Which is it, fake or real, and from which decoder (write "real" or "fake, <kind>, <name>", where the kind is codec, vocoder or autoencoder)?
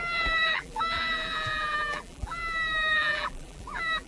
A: fake, vocoder, BigVGAN v2